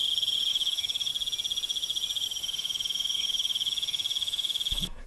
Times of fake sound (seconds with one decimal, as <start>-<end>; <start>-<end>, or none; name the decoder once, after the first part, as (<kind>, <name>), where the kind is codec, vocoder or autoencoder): 0.5-1.1 (autoencoder, DAC-VAE); 2.4-5.1